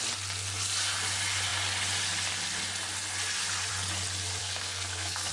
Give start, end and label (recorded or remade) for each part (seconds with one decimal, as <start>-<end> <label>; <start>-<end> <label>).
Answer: 0.0-4.4 recorded; 4.4-5.3 remade